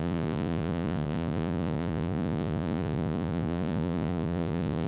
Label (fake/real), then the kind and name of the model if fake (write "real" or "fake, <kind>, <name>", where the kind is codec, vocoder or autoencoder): fake, vocoder, Vocos